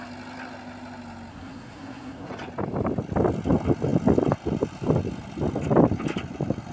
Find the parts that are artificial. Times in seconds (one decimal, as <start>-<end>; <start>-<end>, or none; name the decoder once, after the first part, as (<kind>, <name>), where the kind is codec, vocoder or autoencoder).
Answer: 1.3-2.3 (codec, SNAC)